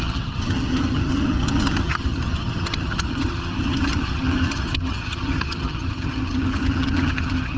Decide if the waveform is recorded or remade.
remade